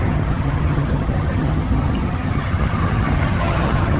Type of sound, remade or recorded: remade